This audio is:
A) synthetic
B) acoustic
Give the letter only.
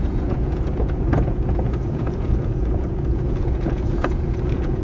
A